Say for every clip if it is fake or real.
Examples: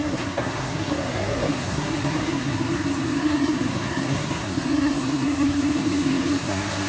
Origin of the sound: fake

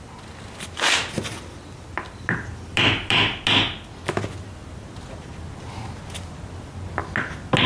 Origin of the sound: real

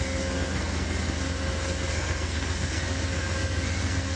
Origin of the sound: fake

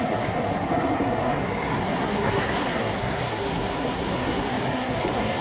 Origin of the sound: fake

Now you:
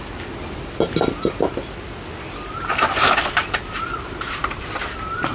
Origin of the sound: real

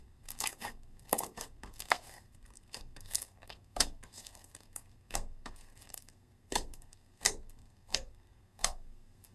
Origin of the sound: fake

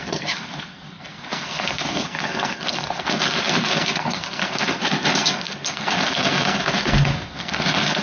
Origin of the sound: fake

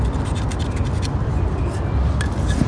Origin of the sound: real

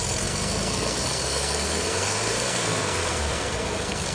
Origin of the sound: fake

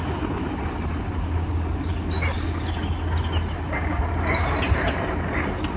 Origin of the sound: real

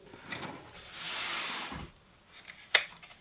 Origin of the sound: real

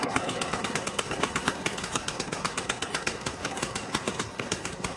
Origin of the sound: fake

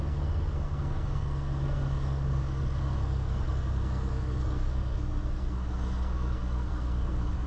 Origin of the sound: fake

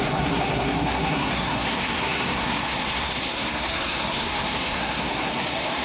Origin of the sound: fake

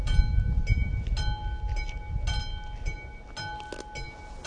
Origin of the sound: real